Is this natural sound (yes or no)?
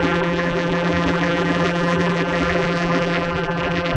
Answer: no